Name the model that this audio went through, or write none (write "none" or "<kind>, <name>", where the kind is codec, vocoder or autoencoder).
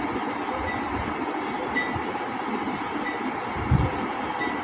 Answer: none